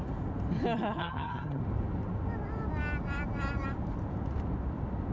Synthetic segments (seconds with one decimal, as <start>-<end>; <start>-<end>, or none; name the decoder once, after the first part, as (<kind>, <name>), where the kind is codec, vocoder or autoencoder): 1.0-1.6 (vocoder, HiFi-GAN)